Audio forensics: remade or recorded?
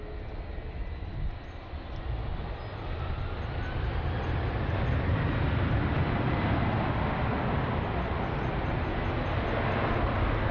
recorded